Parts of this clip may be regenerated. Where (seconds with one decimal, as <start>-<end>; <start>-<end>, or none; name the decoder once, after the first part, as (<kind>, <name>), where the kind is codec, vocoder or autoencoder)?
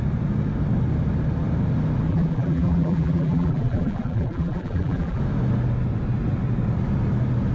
2.1-5.2 (vocoder, BigVGAN v2)